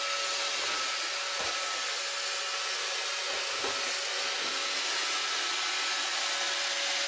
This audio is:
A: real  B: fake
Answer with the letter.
A